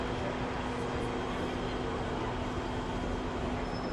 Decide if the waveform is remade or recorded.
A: recorded